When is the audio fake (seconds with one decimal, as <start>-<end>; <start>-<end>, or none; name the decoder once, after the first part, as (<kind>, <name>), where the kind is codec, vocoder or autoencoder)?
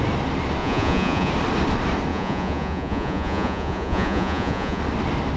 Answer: 0.6-1.3 (vocoder, Vocos); 2.1-4.8